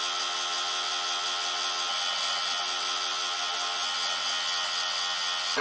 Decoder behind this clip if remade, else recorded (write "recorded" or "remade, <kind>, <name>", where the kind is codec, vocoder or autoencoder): recorded